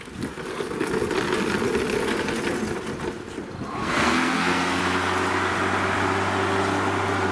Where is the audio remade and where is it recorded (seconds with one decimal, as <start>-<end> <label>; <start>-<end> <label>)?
0.0-3.8 recorded; 3.8-4.8 remade; 4.8-7.3 recorded